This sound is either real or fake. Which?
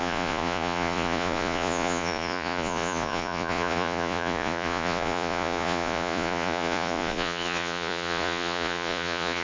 fake